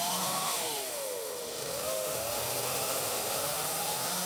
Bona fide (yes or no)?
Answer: no